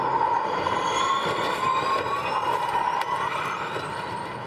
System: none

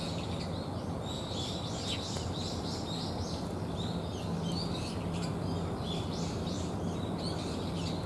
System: none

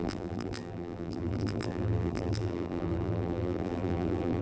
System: vocoder, BigVGAN v2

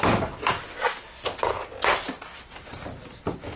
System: none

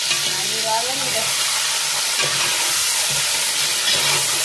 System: none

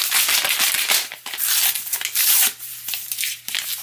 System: none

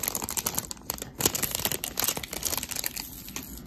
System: none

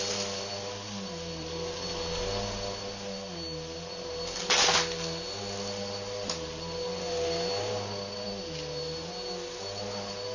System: none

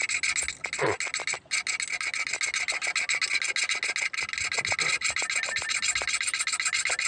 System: none